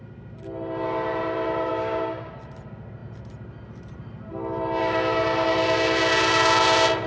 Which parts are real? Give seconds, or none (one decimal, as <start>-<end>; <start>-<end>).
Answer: 0.0-1.7; 2.3-7.1